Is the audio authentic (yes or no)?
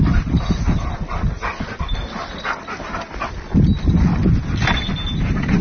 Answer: yes